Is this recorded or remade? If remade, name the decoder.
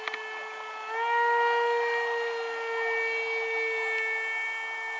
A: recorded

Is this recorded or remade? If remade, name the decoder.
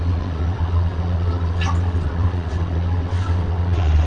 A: remade, vocoder, WaveNeXt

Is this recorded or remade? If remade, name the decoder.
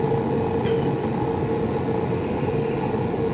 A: recorded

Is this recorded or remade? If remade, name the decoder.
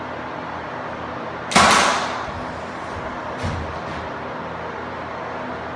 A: recorded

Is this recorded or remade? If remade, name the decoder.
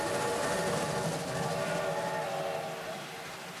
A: recorded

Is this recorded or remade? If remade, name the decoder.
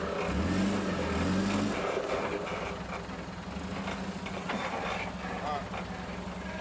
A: recorded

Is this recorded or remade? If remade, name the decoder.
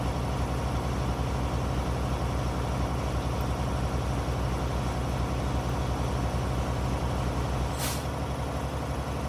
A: recorded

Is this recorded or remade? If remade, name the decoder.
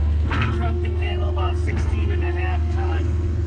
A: remade, codec, SNAC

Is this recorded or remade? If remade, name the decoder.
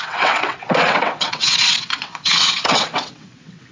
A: remade, vocoder, WaveNeXt